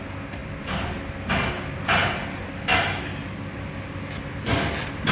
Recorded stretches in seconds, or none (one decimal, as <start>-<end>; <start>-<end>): 0.0-5.1